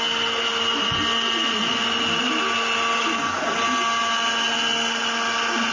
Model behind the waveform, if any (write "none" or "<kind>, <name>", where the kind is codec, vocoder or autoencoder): none